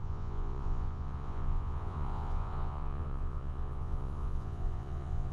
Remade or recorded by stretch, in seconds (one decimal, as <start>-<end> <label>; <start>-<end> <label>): 0.0-5.3 remade